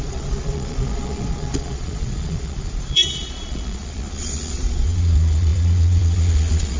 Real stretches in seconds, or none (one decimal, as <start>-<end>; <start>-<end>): none